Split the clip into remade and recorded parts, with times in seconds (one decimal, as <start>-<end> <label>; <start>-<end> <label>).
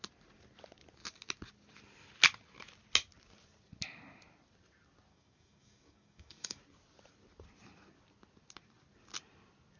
0.0-5.1 recorded; 5.1-6.6 remade; 6.6-9.8 recorded